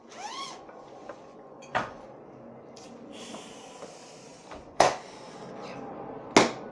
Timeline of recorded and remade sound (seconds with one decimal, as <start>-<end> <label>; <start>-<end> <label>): 0.0-2.0 remade; 2.0-4.3 recorded; 4.3-5.4 remade; 5.4-6.7 recorded